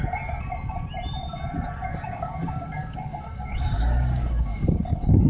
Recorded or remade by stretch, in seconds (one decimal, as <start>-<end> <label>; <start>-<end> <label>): 0.0-1.9 recorded; 1.9-5.3 remade